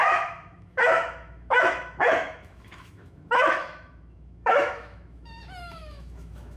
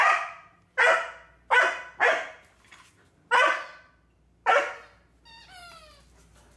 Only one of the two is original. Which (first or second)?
second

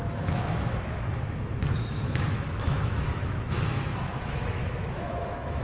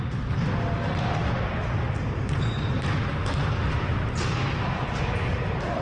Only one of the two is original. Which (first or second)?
second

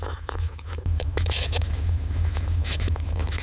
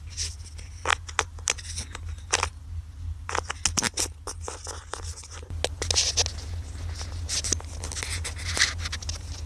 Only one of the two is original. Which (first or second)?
second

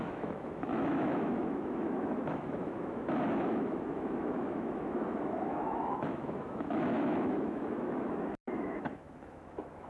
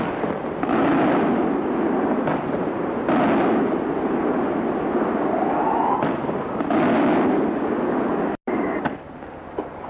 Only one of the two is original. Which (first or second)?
second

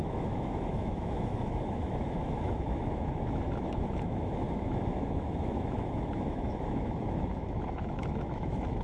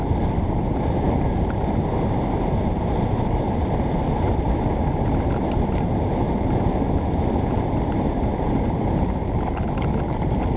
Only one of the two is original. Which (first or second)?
second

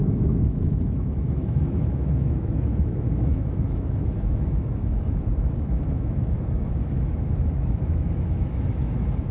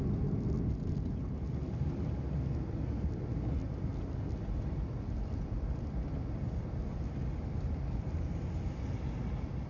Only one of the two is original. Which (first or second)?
second